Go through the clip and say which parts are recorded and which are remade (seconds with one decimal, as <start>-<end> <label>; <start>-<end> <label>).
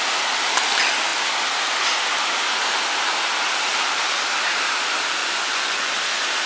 0.0-5.2 recorded; 5.2-5.9 remade; 5.9-6.5 recorded